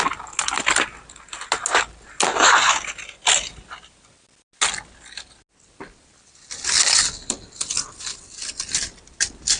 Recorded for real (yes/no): yes